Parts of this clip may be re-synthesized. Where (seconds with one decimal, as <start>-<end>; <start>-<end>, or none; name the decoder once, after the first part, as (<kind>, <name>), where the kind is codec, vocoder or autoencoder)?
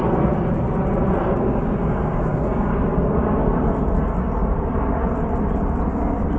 1.2-2.7 (codec, DAC); 5.9-6.4